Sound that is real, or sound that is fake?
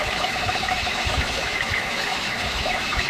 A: fake